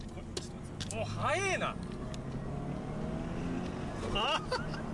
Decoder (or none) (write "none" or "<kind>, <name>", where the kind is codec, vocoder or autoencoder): none